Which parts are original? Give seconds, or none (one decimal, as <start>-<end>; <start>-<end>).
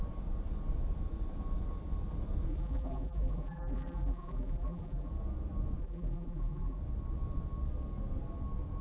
0.0-2.5; 5.1-5.8; 6.8-8.8